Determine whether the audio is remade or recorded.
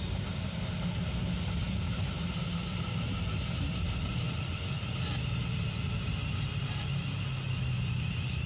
recorded